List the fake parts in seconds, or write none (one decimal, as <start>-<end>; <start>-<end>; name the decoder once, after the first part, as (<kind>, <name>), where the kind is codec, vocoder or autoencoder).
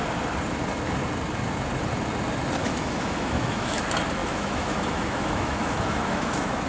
2.6-3.8 (autoencoder, DAC-VAE); 4.2-6.7